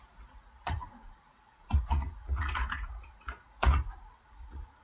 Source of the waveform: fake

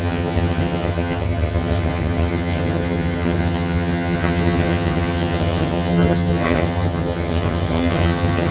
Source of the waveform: fake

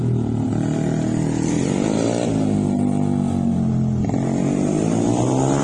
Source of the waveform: real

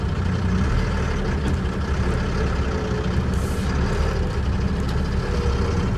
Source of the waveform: real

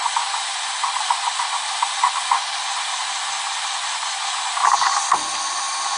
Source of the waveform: real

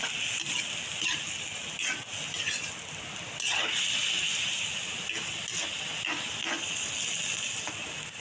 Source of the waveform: real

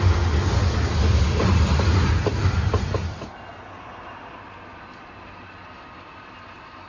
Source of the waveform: real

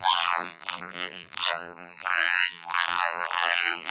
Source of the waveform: fake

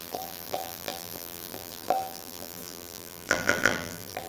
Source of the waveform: fake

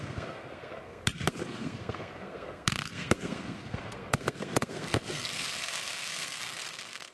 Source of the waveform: fake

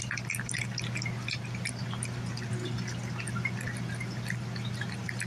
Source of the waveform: real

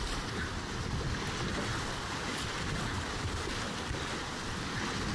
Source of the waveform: real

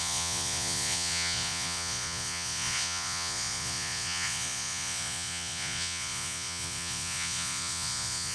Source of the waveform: fake